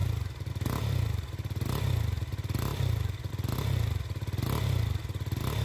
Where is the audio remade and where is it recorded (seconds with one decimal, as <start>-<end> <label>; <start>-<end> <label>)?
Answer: 0.0-2.7 recorded; 2.7-3.3 remade; 3.3-5.6 recorded